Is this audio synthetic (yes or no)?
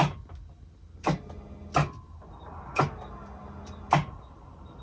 no